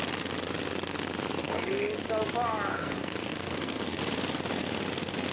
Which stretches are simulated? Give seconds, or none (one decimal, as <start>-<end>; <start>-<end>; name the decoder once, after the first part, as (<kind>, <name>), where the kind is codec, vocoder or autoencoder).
1.4-2.0 (codec, SNAC); 2.7-4.0